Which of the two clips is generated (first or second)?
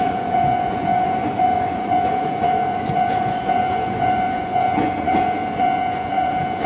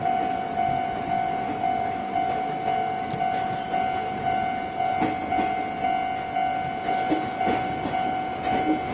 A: first